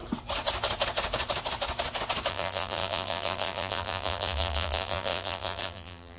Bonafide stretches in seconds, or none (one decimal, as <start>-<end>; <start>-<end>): 0.0-2.3